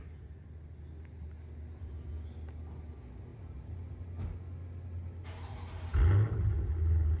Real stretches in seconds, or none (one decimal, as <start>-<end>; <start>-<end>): 0.0-7.2